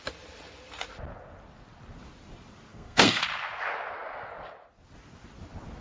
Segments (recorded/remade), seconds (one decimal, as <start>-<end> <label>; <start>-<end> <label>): 0.0-2.7 recorded; 2.7-3.2 remade; 3.2-5.8 recorded